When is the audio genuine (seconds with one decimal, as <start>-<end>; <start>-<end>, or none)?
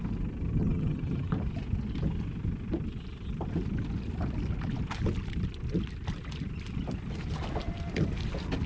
0.0-0.6; 1.3-8.7